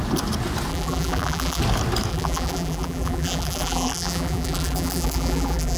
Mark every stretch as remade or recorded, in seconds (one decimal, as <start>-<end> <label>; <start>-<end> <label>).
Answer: 0.0-0.7 recorded; 0.7-1.6 remade; 1.6-2.1 recorded; 2.1-5.8 remade